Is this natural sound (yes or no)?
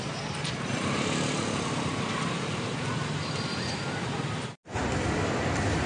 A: yes